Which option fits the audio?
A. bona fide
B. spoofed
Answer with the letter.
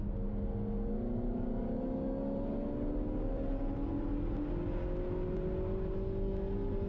A